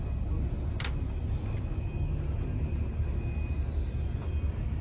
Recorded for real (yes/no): yes